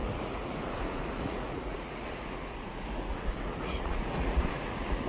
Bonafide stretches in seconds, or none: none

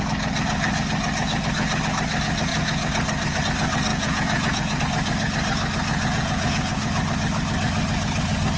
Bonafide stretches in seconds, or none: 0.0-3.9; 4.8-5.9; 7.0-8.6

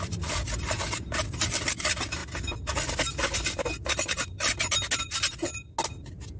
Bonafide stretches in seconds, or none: 0.0-6.4